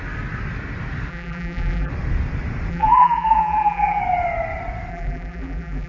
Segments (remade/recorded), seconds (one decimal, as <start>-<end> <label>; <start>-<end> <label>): 0.0-1.1 recorded; 1.1-1.9 remade; 1.9-2.7 recorded; 2.7-4.0 remade; 4.0-4.9 recorded; 4.9-5.9 remade